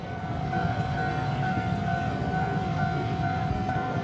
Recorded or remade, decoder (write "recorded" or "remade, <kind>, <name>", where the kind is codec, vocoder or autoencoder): remade, codec, SNAC